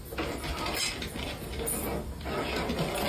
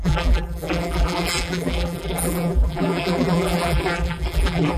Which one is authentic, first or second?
first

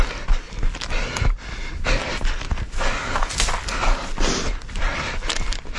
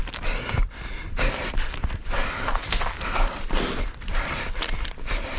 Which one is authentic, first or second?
first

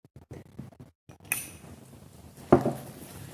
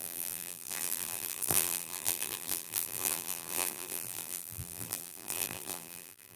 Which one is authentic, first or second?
first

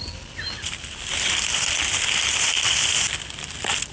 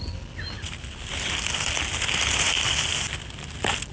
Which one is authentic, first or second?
second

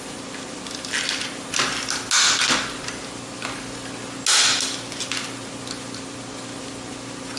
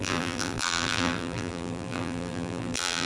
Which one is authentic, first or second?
first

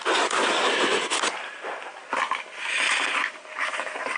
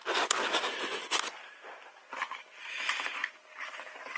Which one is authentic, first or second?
second